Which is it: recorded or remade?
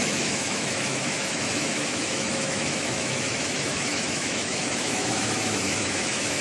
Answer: remade